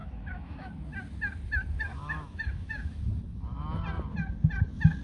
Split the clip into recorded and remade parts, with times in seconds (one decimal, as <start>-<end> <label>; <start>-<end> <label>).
0.0-0.7 remade; 0.7-1.9 recorded; 1.9-3.0 remade; 3.0-5.0 recorded

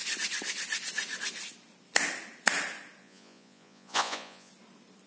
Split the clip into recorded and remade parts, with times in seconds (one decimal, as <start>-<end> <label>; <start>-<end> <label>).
0.0-3.0 recorded; 3.0-4.5 remade; 4.5-5.1 recorded

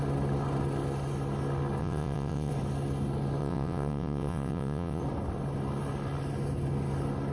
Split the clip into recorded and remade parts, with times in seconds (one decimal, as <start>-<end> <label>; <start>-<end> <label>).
0.0-1.8 recorded; 1.8-2.5 remade; 2.5-3.4 recorded; 3.4-5.0 remade; 5.0-7.3 recorded

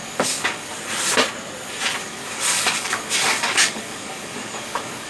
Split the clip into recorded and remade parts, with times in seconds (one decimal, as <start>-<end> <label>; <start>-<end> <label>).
0.0-0.7 remade; 0.7-2.0 recorded; 2.0-5.1 remade

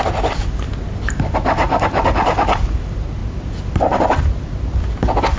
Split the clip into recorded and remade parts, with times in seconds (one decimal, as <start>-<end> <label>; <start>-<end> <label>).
0.0-5.4 recorded

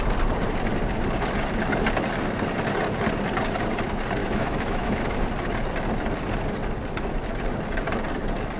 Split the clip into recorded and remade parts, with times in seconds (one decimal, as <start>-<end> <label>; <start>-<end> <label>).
0.0-4.2 recorded; 4.2-5.2 remade; 5.2-8.6 recorded